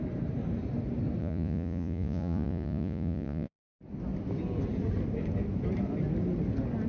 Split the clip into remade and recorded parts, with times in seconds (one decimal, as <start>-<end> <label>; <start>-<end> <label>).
0.0-1.2 recorded; 1.2-3.6 remade; 3.6-6.9 recorded